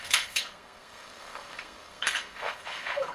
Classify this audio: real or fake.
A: fake